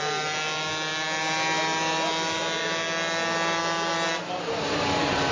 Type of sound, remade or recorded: recorded